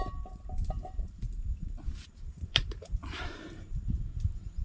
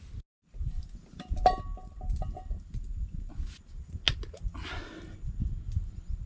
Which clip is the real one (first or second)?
second